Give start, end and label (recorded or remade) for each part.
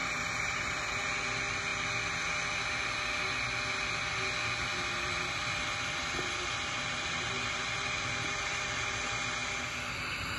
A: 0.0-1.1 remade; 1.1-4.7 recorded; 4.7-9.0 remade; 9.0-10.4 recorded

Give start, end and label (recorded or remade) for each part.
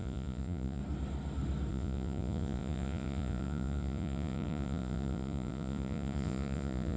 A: 0.0-0.8 remade; 0.8-1.7 recorded; 1.7-7.0 remade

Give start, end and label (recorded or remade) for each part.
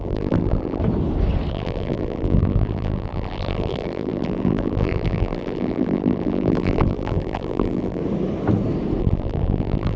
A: 0.0-0.8 remade; 0.8-1.5 recorded; 1.5-8.0 remade; 8.0-9.0 recorded; 9.0-10.0 remade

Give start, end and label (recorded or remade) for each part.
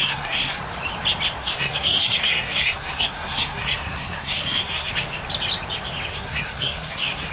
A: 0.0-0.6 remade; 0.6-1.4 recorded; 1.4-4.9 remade; 4.9-6.1 recorded; 6.1-7.3 remade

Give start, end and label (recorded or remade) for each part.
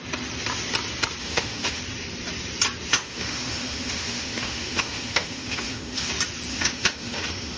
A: 0.0-1.2 recorded; 1.2-1.8 remade; 1.8-2.9 recorded; 2.9-6.1 remade; 6.1-6.5 recorded; 6.5-7.6 remade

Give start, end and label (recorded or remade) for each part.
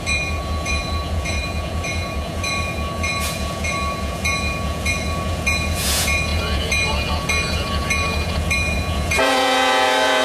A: 0.0-10.2 remade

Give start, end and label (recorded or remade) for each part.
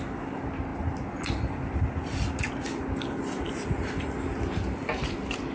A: 0.0-5.5 recorded